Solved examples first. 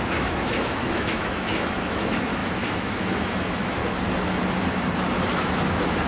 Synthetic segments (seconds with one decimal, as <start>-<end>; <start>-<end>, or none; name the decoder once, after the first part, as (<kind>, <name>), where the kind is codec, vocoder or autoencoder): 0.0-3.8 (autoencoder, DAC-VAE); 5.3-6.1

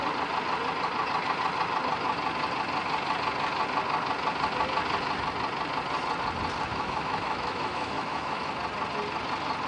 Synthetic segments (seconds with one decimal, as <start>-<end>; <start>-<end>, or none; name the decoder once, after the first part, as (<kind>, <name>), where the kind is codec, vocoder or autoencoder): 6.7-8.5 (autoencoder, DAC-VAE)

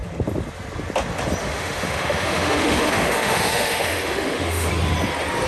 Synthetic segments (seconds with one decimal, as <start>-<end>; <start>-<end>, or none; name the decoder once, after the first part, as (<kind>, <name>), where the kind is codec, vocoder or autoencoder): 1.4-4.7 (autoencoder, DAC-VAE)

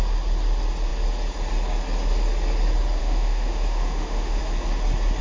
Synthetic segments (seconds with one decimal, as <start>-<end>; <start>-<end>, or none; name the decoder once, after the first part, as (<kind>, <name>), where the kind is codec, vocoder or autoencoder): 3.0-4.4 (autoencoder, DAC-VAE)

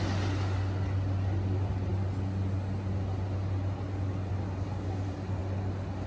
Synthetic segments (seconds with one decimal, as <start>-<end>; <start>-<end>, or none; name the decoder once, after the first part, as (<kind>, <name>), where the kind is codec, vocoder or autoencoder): none